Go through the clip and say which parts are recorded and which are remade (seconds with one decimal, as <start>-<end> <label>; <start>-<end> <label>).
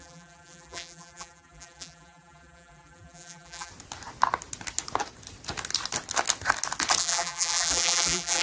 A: 0.0-3.7 remade; 3.7-7.0 recorded; 7.0-8.4 remade